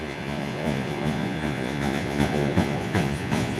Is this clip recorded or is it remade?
remade